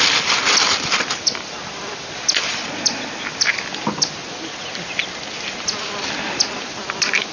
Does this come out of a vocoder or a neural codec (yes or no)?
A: no